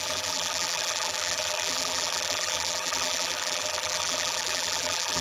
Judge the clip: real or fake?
fake